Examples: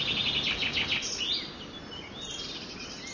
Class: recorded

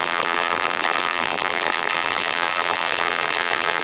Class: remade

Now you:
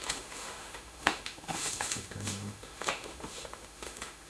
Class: remade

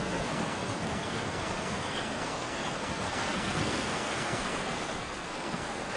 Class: remade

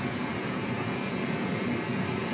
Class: remade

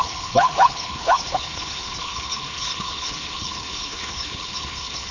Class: remade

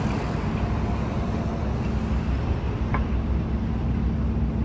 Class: recorded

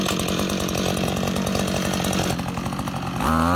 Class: recorded